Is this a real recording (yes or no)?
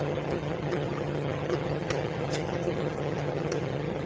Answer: no